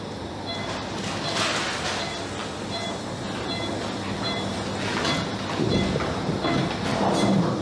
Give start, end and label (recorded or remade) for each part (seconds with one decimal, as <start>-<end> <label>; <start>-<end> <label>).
0.0-6.9 recorded; 6.9-7.6 remade